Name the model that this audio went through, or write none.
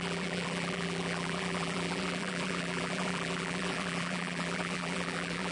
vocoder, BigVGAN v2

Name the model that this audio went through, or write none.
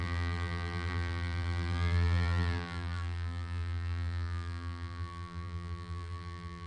vocoder, BigVGAN v2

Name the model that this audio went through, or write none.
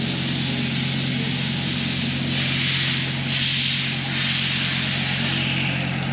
none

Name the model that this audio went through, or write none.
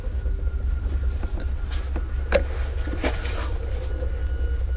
none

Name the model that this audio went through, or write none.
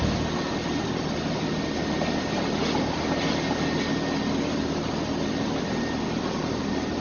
none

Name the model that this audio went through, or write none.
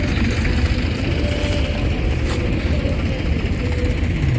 none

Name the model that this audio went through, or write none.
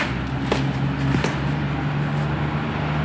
none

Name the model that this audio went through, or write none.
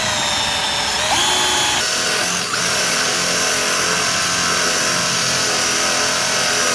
none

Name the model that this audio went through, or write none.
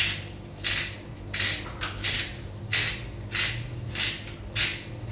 none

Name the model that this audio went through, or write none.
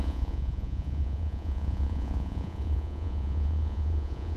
vocoder, Vocos